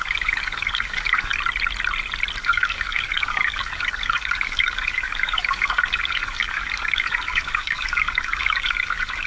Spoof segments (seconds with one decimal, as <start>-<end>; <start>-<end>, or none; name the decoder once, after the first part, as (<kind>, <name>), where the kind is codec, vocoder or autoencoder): 0.0-1.3 (codec, DAC); 2.4-9.3